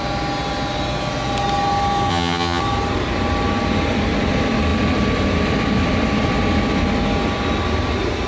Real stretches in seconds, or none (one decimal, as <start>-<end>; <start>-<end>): 0.0-2.1; 2.6-8.3